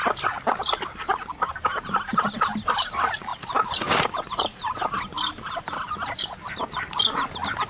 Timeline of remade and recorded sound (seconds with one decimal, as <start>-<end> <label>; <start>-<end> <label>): 0.0-7.7 recorded